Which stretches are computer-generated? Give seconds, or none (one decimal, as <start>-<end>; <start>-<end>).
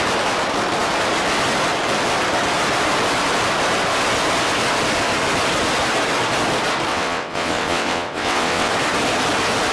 6.9-8.7